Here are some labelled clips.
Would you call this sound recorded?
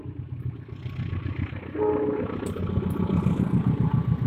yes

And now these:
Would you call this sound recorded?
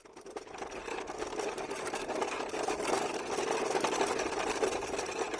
yes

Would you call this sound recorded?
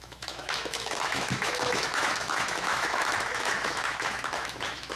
no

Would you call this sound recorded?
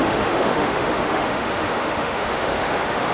no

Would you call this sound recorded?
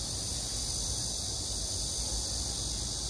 yes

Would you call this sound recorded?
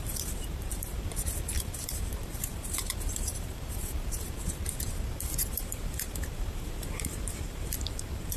no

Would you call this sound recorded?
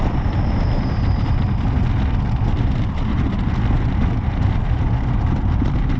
yes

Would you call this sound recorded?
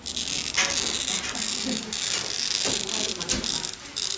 yes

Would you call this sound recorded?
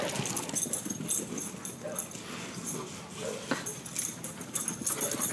yes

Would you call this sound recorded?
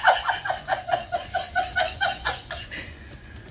no